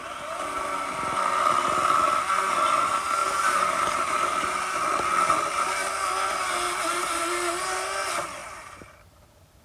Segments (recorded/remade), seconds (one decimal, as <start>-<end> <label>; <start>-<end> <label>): 0.0-3.2 recorded; 3.2-4.5 remade; 4.5-8.4 recorded; 8.4-8.9 remade; 8.9-9.6 recorded